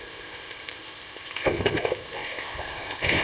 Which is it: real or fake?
fake